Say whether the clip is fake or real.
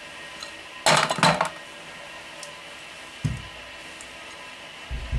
real